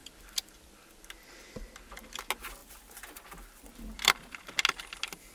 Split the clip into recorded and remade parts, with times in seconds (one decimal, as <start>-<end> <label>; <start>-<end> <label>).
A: 0.0-2.6 recorded; 2.6-4.4 remade; 4.4-5.3 recorded